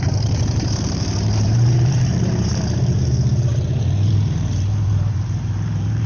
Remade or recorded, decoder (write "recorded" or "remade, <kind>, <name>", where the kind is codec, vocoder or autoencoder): remade, vocoder, BigVGAN v2